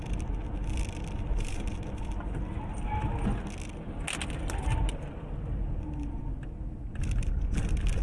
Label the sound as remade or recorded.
recorded